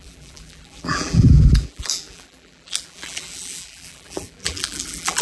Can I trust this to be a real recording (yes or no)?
no